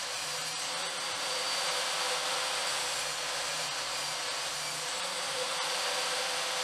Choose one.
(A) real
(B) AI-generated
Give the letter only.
A